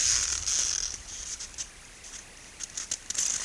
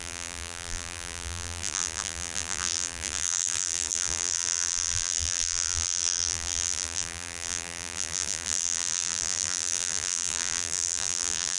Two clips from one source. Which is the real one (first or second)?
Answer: first